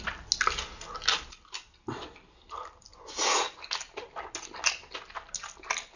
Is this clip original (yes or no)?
yes